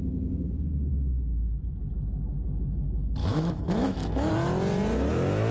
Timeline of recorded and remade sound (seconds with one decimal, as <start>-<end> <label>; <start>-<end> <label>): 0.0-0.9 recorded; 0.9-1.9 remade; 1.9-3.2 recorded; 3.2-4.3 remade; 4.3-5.5 recorded